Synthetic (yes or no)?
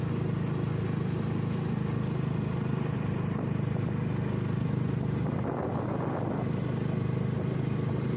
no